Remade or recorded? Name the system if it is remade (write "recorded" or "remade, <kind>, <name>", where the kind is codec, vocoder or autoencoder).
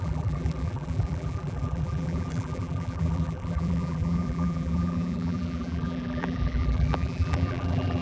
remade, vocoder, BigVGAN v2